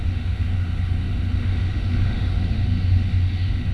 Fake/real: fake